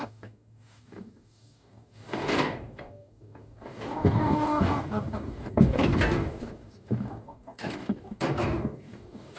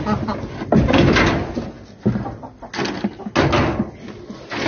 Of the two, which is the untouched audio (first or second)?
second